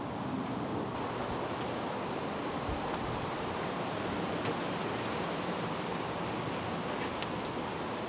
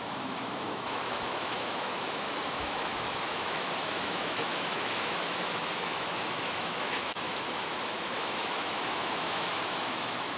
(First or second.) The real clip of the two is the first